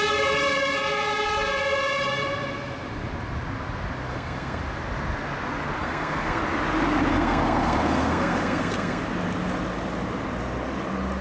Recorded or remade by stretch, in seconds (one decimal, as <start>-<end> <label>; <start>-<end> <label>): 0.0-4.1 recorded; 4.1-4.6 remade; 4.6-5.8 recorded; 5.8-6.4 remade; 6.4-7.1 recorded; 7.1-9.0 remade; 9.0-11.2 recorded